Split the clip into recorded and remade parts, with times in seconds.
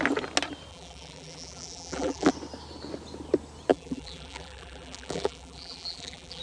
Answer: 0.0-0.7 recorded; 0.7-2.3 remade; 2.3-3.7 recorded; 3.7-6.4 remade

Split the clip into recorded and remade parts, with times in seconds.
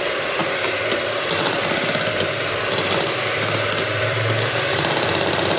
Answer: 0.0-3.9 recorded; 3.9-4.7 remade; 4.7-5.6 recorded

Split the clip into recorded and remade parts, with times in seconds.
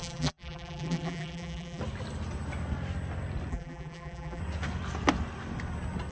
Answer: 0.0-1.8 remade; 1.8-3.5 recorded; 3.5-4.4 remade; 4.4-6.1 recorded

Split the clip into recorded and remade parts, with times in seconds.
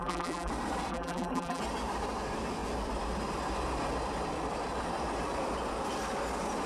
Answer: 0.0-0.5 remade; 0.5-0.9 recorded; 0.9-1.6 remade; 1.6-6.7 recorded